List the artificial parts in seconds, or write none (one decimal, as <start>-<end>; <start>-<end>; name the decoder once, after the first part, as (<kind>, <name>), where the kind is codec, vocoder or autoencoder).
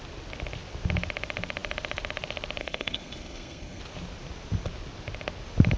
2.6-3.8 (codec, SNAC)